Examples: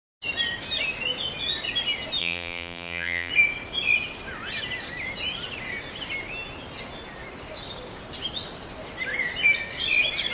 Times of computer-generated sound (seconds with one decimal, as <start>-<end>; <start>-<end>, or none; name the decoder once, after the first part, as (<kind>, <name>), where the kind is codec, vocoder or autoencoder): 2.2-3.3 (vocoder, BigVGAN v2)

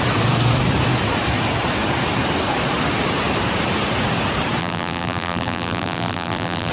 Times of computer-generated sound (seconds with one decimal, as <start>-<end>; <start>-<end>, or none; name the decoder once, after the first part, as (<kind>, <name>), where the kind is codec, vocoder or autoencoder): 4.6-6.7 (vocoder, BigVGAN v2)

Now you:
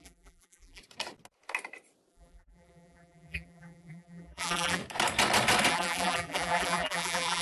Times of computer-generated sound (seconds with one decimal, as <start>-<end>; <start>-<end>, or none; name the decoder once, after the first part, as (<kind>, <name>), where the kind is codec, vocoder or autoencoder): 0.0-0.8 (vocoder, BigVGAN v2); 2.1-4.8; 5.7-7.4

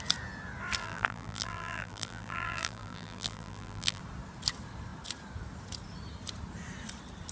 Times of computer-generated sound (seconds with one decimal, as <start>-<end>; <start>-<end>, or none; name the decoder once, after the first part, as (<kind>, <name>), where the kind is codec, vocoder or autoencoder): 0.8-4.0 (vocoder, BigVGAN v2)